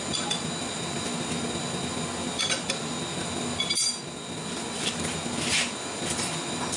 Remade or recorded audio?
recorded